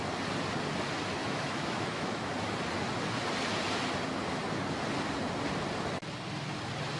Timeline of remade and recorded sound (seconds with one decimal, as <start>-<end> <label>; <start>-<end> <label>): 0.0-1.2 recorded; 1.2-2.3 remade; 2.3-7.0 recorded